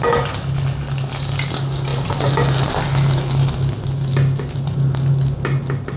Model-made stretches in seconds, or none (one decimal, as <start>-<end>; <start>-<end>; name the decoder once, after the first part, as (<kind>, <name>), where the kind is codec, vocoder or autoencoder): none